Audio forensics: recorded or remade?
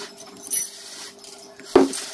recorded